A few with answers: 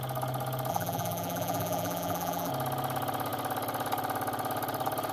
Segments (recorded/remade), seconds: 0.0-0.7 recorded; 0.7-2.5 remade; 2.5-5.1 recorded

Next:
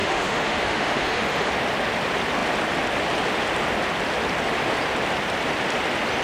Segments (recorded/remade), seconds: 0.0-1.5 remade; 1.5-6.2 recorded

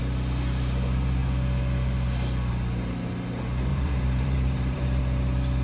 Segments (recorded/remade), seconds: 0.0-3.7 recorded; 3.7-5.0 remade; 5.0-5.6 recorded